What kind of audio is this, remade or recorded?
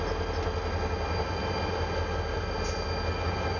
recorded